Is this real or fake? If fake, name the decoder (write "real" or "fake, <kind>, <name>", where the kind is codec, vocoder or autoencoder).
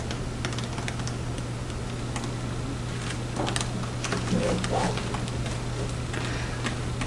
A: real